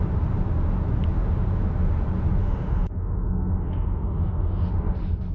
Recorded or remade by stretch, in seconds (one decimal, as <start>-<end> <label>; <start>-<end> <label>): 0.0-2.4 recorded; 2.4-4.7 remade; 4.7-5.3 recorded